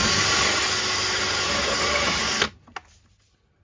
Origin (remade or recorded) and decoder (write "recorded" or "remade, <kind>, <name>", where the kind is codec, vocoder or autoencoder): recorded